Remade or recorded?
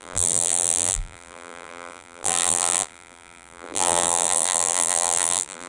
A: remade